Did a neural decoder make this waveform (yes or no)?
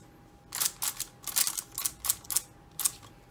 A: no